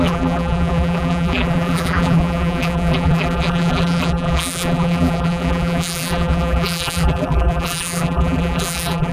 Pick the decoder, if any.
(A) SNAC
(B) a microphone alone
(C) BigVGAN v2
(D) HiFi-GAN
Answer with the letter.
C